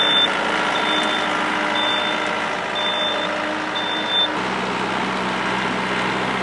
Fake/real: real